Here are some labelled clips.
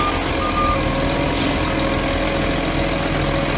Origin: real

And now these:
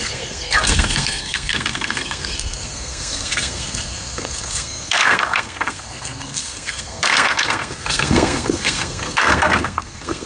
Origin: fake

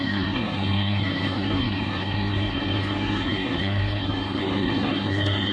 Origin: fake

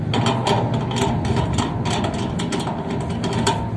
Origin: real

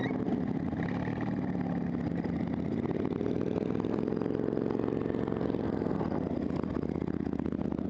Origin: real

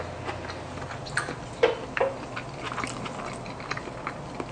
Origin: real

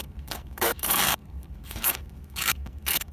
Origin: fake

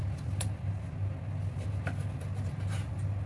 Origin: real